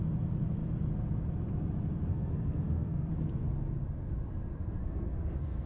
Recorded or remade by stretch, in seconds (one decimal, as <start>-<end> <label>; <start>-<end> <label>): 0.0-2.1 recorded; 2.1-3.1 remade; 3.1-4.8 recorded; 4.8-5.7 remade